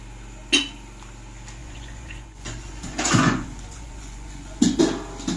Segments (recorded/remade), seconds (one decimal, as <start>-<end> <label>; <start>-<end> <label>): 0.0-1.6 recorded; 1.6-4.8 remade; 4.8-5.4 recorded